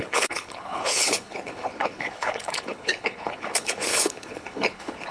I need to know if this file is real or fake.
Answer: fake